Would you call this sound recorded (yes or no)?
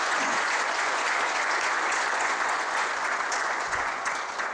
no